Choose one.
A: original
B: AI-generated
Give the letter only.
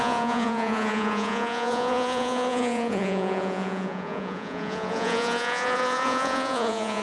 B